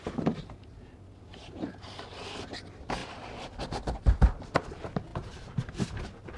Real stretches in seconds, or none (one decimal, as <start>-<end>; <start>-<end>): 0.0-6.4